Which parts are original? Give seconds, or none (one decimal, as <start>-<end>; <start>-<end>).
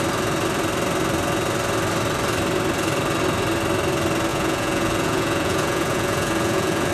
0.0-4.3